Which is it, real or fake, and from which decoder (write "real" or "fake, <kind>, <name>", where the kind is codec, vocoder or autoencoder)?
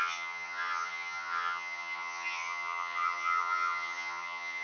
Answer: fake, vocoder, HiFi-GAN